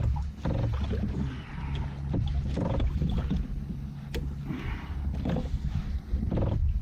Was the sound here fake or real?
real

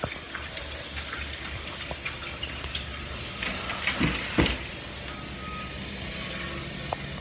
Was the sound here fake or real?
real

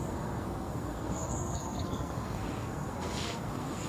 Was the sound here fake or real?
fake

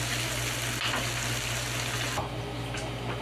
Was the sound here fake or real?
real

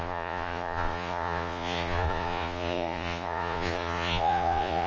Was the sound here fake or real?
fake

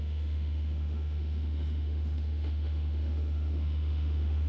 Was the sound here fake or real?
fake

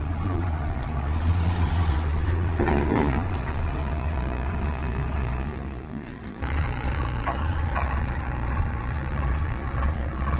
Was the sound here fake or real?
fake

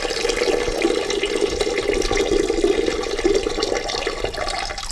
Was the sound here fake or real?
real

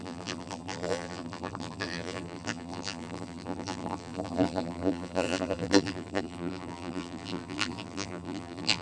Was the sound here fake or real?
fake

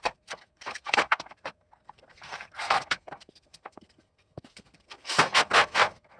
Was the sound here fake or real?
fake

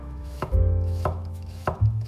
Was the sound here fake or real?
fake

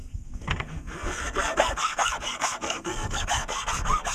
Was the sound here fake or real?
fake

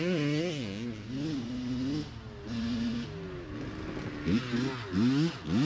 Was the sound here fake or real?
real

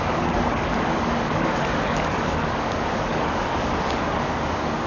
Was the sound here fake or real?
fake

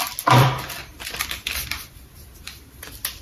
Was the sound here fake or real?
fake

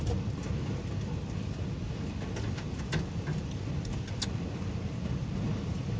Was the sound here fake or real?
real